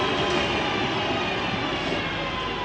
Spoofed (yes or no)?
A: no